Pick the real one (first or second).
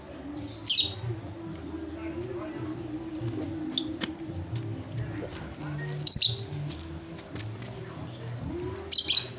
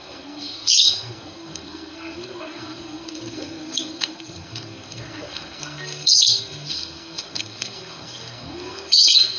first